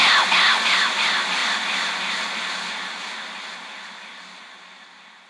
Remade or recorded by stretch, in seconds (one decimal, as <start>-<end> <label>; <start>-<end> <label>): 0.0-5.3 recorded